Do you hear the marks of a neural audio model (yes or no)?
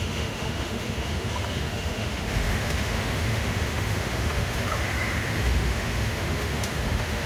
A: yes